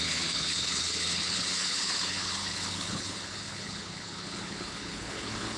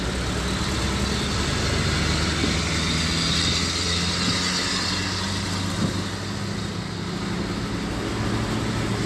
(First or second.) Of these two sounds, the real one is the second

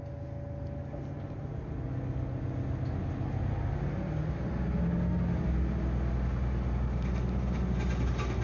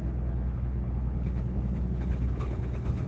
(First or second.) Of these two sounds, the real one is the first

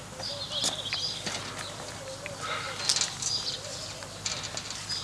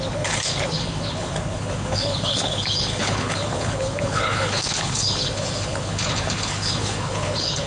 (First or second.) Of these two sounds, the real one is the first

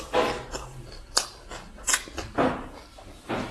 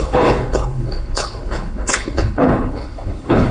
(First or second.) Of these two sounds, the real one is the first